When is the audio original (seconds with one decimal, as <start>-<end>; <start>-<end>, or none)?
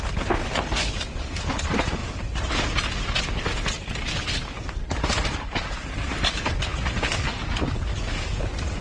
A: 0.0-8.8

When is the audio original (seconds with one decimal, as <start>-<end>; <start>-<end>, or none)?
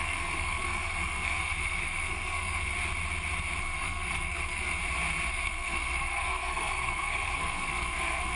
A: 2.7-3.6; 4.8-5.3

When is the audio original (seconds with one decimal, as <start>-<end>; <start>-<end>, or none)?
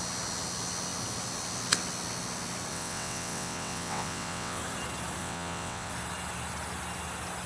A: 0.0-2.7; 4.6-5.2; 5.9-7.5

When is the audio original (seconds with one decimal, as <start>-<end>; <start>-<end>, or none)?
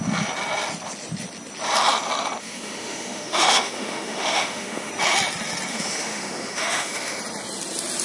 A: 0.0-2.4; 4.9-5.7; 7.2-8.0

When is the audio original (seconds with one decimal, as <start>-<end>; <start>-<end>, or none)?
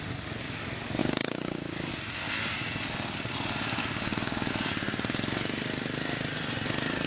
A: 0.0-1.0; 1.9-3.8; 4.5-7.1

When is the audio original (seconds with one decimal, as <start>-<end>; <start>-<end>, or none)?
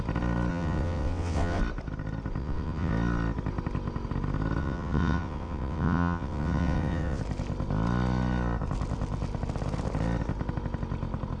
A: 0.0-0.5; 1.6-2.4; 2.9-4.6; 7.2-11.4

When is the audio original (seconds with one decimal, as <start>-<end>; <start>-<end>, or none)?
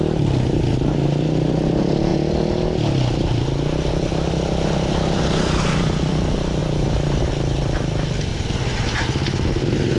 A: 0.0-6.6; 7.3-8.3; 9.6-10.0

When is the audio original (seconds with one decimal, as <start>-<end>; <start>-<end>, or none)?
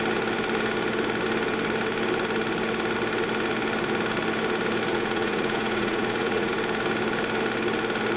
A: 0.0-4.9; 6.5-8.2